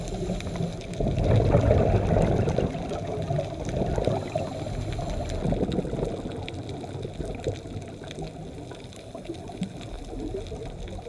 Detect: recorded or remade recorded